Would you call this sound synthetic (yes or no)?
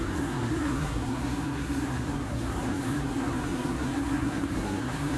yes